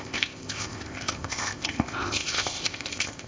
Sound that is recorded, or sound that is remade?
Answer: remade